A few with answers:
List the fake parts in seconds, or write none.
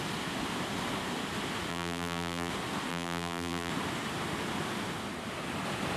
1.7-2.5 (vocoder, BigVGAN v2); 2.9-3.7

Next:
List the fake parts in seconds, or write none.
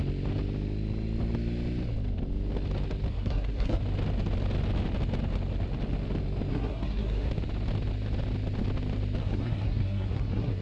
3.1-3.8 (codec, SNAC); 6.5-7.3; 9.2-10.6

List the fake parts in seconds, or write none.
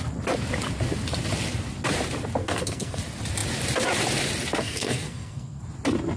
2.4-3.0 (codec, SNAC); 4.6-5.6